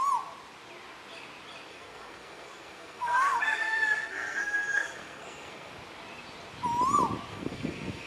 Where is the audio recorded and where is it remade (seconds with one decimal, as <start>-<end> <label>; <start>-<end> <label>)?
0.0-1.7 recorded; 1.7-5.7 remade; 5.7-7.3 recorded; 7.3-8.1 remade